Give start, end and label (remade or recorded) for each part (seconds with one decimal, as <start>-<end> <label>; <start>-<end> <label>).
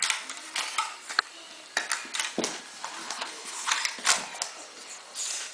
0.0-3.0 recorded; 3.0-3.7 remade; 3.7-5.5 recorded